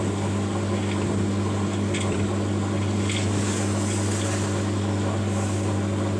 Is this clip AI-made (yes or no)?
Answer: no